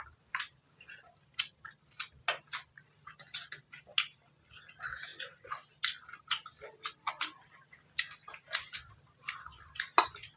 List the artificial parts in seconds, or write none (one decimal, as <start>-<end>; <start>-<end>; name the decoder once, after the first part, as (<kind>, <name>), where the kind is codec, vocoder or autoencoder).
none